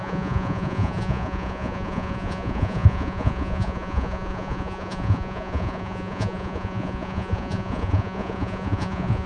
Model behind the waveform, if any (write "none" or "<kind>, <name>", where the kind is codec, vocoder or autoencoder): vocoder, Vocos